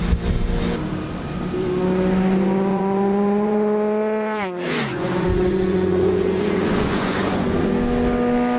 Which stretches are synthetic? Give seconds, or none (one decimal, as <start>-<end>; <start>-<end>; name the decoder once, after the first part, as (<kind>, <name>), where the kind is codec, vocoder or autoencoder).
2.7-7.7 (vocoder, Vocos)